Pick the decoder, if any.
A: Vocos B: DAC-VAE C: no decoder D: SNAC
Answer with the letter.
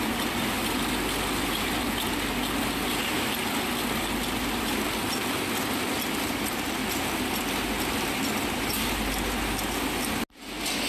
C